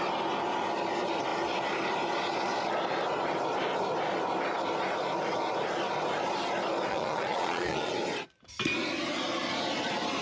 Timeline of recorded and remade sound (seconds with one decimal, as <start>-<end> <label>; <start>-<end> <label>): 0.0-6.9 recorded; 6.9-7.9 remade; 7.9-10.2 recorded